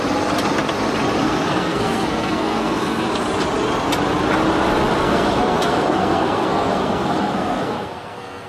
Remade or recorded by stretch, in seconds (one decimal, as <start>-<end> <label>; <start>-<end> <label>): 0.0-1.2 recorded; 1.2-3.1 remade; 3.1-5.0 recorded; 5.0-8.5 remade